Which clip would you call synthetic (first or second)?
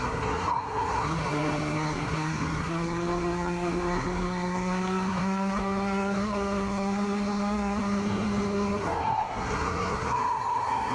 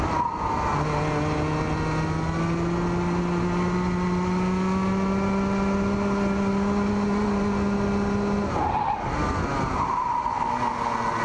first